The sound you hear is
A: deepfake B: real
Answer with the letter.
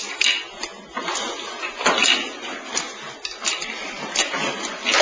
B